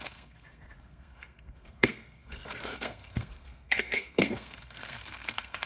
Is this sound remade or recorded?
remade